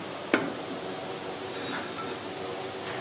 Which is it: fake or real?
real